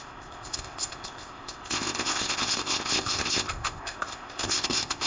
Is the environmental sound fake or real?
fake